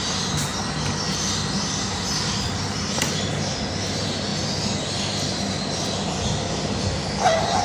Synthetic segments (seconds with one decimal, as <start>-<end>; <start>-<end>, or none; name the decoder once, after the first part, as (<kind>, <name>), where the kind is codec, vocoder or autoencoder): none